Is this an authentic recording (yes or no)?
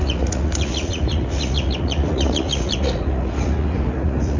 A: no